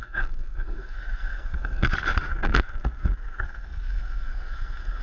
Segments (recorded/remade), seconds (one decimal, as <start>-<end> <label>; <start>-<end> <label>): 0.0-1.9 remade; 1.9-2.3 recorded; 2.3-5.0 remade